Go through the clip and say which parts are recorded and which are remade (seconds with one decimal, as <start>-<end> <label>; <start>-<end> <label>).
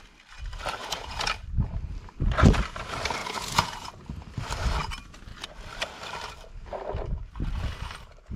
0.0-0.8 recorded; 0.8-1.3 remade; 1.3-3.2 recorded; 3.2-3.9 remade; 3.9-8.4 recorded